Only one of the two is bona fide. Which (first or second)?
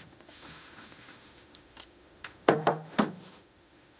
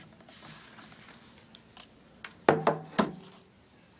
second